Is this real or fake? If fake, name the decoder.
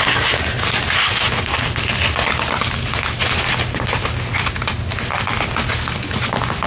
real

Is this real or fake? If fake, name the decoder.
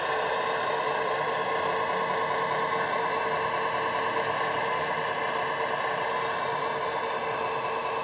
real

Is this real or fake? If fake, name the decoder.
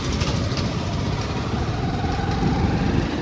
real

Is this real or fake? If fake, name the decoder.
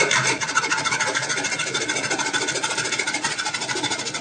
real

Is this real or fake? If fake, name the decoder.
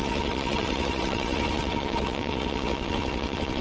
fake, vocoder, WaveNeXt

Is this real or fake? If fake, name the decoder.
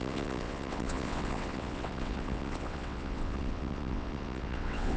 fake, vocoder, WaveNeXt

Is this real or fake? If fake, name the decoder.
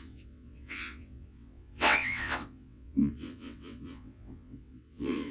fake, vocoder, WaveNeXt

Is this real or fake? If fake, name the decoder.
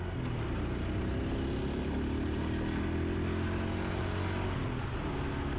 real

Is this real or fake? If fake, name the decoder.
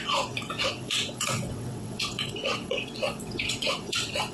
fake, vocoder, WaveNeXt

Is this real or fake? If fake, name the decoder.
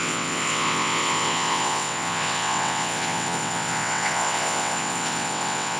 fake, vocoder, WaveNeXt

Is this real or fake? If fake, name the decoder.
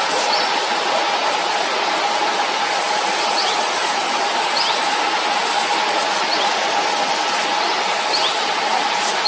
real